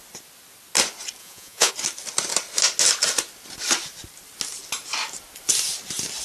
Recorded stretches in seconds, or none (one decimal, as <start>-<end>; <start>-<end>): 0.0-1.2; 1.7-6.2